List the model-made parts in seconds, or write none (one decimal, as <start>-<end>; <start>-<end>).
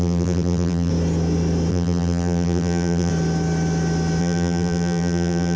0.0-0.9; 1.7-3.1; 4.2-5.6